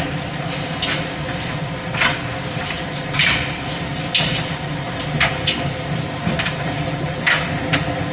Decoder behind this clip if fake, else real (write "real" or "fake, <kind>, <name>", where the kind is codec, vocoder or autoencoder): real